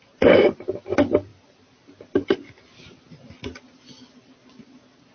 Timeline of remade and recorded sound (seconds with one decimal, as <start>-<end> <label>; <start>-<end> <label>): 0.0-5.1 recorded